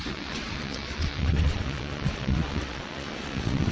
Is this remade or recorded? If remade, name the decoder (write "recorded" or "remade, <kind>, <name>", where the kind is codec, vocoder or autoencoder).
remade, vocoder, WaveNeXt